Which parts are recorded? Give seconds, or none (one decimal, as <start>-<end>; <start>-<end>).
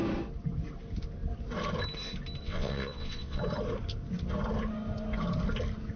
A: 0.0-2.4; 3.4-6.0